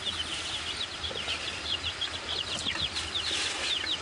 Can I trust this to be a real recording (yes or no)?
yes